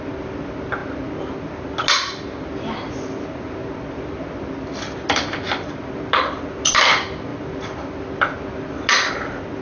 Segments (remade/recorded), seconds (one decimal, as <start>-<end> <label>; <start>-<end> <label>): 0.0-9.6 recorded